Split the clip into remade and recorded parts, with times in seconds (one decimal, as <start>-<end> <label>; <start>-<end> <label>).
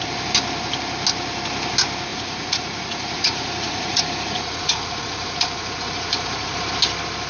0.0-2.1 recorded; 2.1-6.5 remade; 6.5-7.3 recorded